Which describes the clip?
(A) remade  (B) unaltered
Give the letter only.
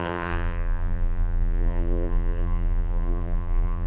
A